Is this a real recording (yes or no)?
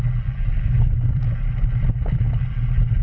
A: yes